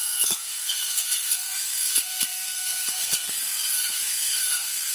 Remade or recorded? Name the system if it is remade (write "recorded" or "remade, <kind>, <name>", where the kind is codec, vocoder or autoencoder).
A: remade, codec, SNAC